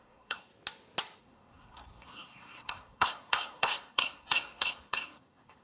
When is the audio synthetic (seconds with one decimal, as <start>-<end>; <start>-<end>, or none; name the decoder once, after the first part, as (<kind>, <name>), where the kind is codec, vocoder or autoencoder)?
0.0-0.5 (codec, SNAC); 1.2-5.6